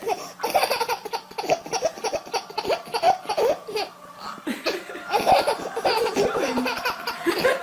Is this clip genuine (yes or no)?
yes